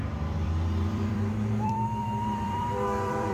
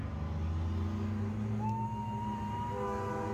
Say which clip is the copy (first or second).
first